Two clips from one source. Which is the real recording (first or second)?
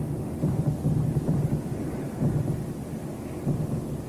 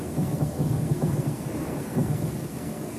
first